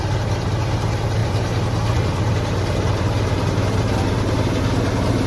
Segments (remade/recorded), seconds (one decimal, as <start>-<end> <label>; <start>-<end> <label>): 0.0-1.2 recorded; 1.2-4.4 remade; 4.4-5.3 recorded